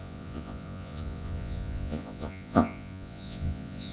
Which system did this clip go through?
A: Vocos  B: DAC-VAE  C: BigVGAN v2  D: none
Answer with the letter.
A